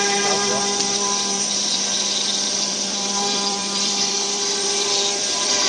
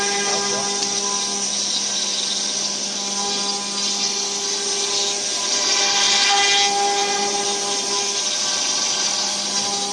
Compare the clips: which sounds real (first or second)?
second